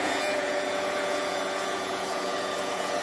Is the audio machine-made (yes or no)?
yes